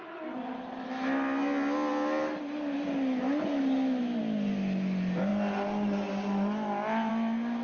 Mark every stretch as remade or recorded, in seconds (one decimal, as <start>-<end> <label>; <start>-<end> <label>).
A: 0.0-7.6 recorded